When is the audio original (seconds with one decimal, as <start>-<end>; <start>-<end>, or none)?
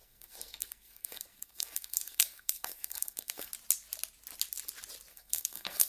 3.5-5.1